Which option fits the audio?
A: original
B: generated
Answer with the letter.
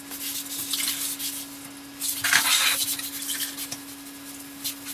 A